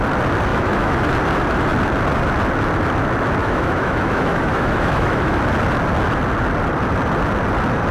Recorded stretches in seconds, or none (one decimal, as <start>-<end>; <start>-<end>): 0.0-0.5; 1.1-3.4; 5.4-7.9